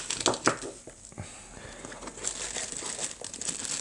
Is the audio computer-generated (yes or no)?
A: no